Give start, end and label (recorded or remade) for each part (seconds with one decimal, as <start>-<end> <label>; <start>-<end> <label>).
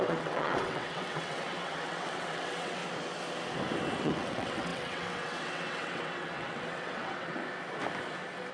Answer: 0.0-2.8 remade; 2.8-4.0 recorded; 4.0-7.4 remade; 7.4-8.5 recorded